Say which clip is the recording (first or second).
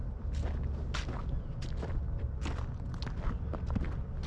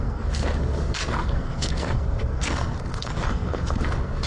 first